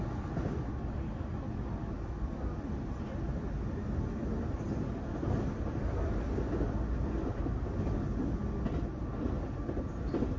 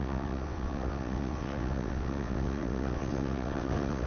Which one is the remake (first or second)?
second